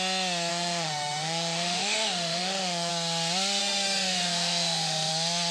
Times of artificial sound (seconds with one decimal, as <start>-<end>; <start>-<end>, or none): 0.5-2.9; 3.6-5.1